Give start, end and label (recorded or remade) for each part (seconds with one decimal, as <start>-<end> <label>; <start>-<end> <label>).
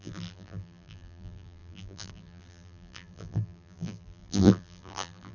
0.0-5.3 remade